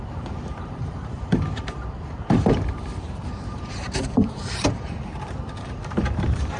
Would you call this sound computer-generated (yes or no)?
yes